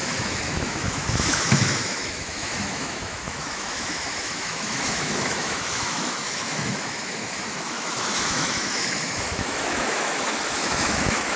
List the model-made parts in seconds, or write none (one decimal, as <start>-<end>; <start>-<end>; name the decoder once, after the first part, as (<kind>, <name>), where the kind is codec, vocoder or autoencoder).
0.0-11.4 (autoencoder, DAC-VAE)